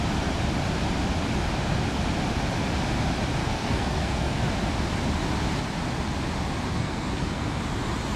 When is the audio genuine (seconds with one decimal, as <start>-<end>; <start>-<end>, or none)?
0.0-3.4; 4.4-6.7; 7.6-8.2